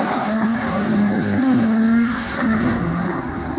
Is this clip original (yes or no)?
no